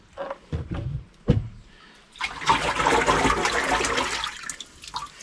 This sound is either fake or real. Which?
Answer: real